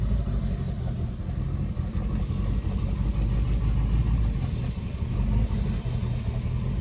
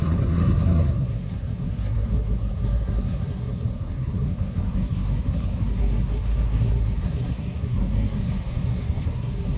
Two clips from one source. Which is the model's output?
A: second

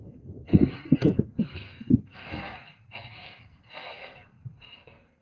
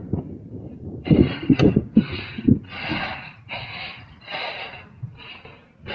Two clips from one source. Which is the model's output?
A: first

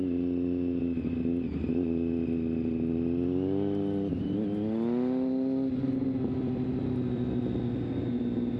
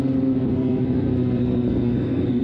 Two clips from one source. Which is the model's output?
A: second